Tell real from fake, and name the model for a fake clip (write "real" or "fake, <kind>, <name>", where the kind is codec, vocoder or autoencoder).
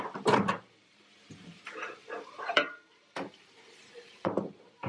fake, vocoder, BigVGAN v2